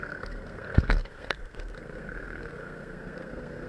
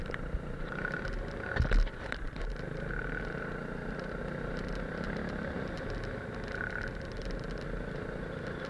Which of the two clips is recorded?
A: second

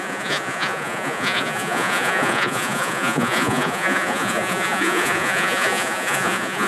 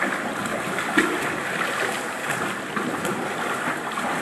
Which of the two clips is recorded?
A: second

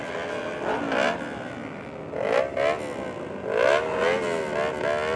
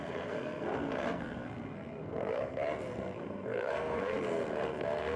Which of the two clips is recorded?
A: first